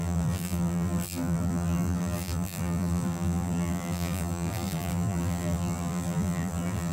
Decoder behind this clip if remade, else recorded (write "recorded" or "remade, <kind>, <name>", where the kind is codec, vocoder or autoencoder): remade, vocoder, BigVGAN v2